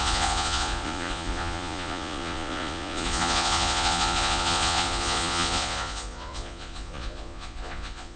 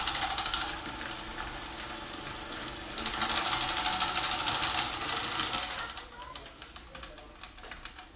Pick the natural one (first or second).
second